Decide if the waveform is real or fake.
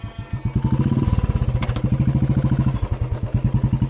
real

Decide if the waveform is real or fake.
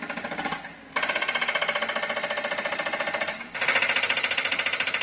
real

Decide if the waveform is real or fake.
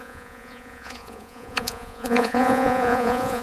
fake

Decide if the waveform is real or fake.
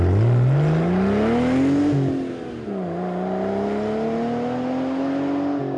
real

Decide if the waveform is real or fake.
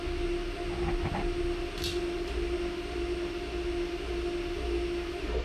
real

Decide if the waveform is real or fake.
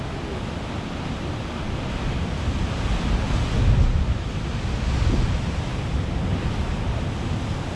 real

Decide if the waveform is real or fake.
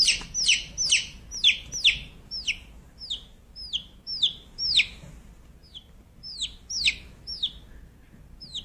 real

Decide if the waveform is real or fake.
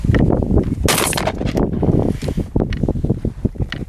real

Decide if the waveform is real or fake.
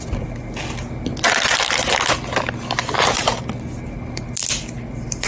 real